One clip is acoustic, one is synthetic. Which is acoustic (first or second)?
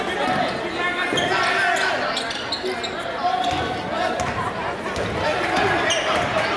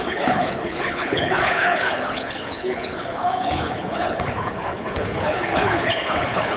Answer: first